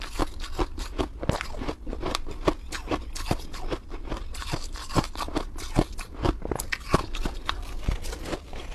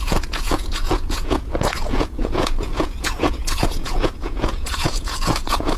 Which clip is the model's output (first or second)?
second